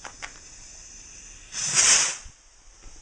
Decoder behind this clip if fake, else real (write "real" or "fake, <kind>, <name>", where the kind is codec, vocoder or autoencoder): real